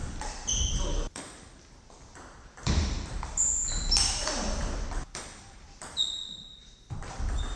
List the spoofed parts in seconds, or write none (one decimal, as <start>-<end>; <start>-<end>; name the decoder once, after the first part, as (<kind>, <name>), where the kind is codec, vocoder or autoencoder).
0.0-3.6 (vocoder, BigVGAN v2); 5.0-7.6